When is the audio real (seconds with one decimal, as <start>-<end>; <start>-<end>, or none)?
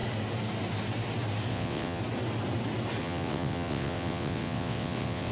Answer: 0.0-1.5; 2.0-3.0